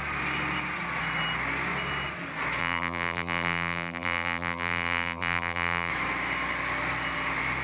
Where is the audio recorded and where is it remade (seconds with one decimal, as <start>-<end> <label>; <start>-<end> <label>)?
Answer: 0.0-2.6 recorded; 2.6-5.9 remade; 5.9-7.6 recorded